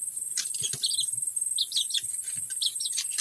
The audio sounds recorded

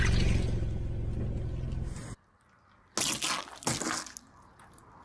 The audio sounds recorded